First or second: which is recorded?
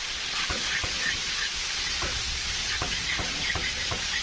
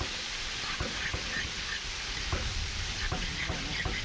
second